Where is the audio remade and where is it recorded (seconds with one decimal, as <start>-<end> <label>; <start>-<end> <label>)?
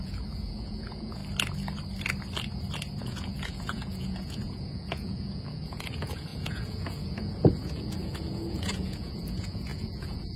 0.0-1.2 remade; 1.2-3.0 recorded; 3.0-10.4 remade